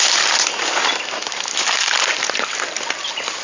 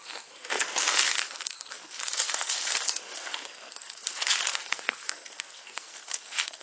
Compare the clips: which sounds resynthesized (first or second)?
second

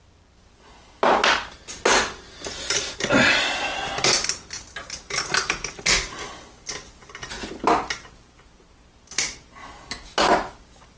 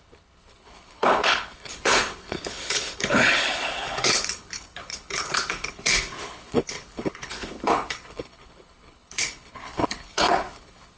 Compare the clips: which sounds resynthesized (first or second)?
second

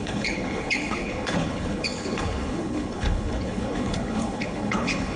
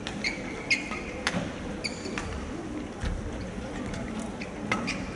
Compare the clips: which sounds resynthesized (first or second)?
first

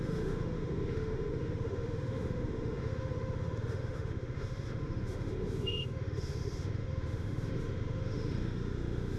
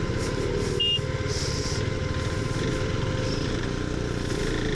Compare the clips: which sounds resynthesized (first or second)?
first